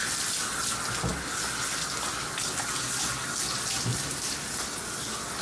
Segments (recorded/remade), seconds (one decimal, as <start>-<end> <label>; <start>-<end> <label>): 0.0-5.4 recorded